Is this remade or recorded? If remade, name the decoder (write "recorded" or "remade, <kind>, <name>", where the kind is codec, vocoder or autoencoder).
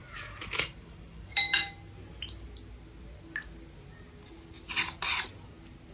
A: recorded